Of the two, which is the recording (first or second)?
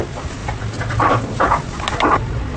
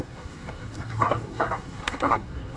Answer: first